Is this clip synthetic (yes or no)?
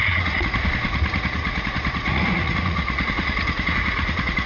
yes